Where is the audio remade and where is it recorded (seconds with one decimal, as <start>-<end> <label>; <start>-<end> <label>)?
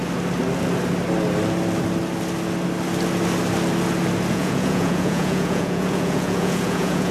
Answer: 0.0-4.3 recorded; 4.3-7.1 remade